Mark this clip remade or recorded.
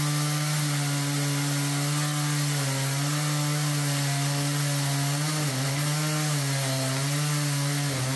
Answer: recorded